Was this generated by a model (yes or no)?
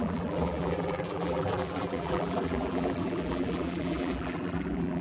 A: yes